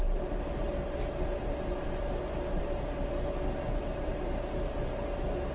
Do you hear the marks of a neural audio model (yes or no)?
no